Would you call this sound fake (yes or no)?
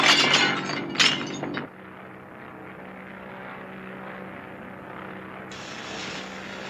no